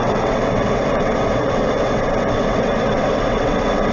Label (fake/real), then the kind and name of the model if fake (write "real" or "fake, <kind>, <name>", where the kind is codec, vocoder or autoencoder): fake, vocoder, WaveNeXt